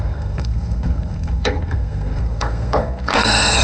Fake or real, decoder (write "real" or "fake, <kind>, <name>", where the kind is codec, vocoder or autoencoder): fake, codec, SNAC